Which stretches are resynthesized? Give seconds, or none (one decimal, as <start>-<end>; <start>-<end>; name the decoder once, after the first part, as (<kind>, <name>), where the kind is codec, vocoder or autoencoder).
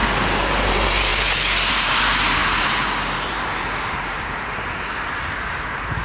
0.0-1.1 (vocoder, BigVGAN v2); 1.7-6.0